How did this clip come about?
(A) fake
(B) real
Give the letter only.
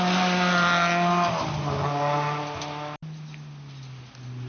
B